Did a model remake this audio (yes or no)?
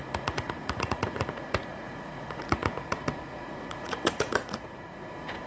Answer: yes